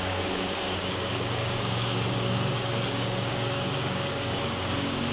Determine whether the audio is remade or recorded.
remade